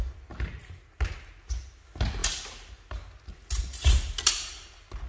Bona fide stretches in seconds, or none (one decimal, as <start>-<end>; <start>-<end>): 0.0-5.1